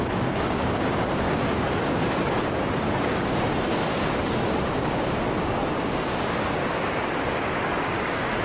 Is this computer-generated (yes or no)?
yes